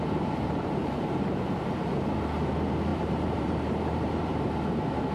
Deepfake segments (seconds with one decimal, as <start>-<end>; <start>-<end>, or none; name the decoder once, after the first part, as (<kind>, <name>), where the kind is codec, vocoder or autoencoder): 0.8-2.0 (vocoder, BigVGAN v2); 2.9-4.5